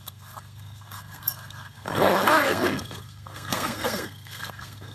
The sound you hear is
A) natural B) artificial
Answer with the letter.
B